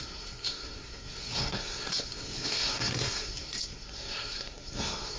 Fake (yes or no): yes